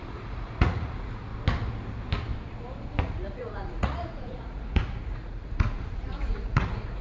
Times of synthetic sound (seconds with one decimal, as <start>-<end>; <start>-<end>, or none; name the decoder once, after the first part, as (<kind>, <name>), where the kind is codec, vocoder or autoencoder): 0.0-1.3 (vocoder, Vocos); 3.0-7.0